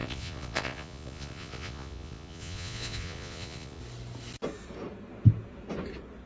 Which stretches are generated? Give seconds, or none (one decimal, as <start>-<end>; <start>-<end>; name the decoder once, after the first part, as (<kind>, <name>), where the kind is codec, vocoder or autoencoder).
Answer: 0.0-3.8 (vocoder, Vocos)